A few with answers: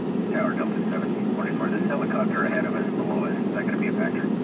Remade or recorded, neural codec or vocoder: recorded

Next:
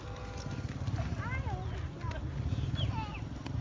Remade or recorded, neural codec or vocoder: recorded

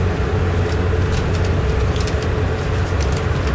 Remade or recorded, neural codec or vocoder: recorded